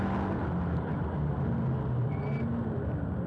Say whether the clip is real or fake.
real